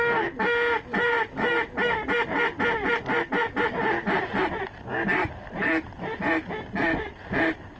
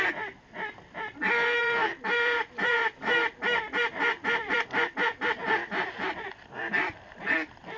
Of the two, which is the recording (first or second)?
first